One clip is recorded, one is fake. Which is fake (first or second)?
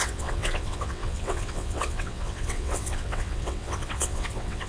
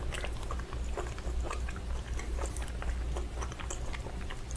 first